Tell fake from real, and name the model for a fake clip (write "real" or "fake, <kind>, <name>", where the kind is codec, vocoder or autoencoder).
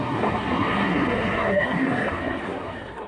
fake, codec, SNAC